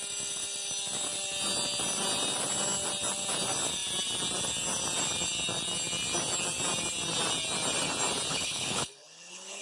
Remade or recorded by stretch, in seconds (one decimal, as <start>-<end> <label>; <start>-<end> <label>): 0.0-8.3 recorded; 8.3-9.6 remade